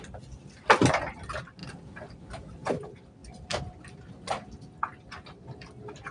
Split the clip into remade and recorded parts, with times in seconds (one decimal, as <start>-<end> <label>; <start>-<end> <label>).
0.0-6.1 recorded